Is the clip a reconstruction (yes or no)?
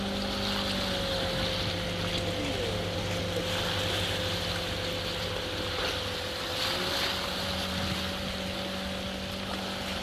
no